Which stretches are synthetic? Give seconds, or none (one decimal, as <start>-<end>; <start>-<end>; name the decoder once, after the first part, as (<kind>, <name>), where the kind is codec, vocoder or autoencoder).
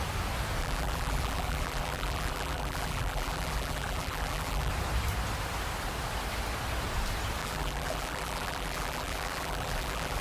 0.6-4.7 (vocoder, BigVGAN v2); 7.4-10.2